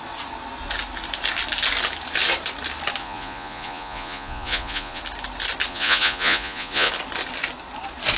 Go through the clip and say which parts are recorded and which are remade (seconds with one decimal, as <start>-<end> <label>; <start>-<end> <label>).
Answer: 0.0-3.0 recorded; 3.0-5.0 remade; 5.0-5.7 recorded; 5.7-6.9 remade; 6.9-8.2 recorded